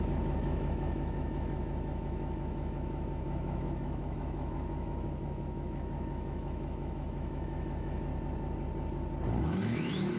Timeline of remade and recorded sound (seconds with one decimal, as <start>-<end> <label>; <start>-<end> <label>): 0.0-8.1 remade; 8.1-9.4 recorded; 9.4-10.2 remade